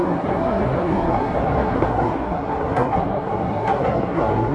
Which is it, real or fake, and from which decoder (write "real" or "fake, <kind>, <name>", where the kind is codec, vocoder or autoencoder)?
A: fake, codec, SNAC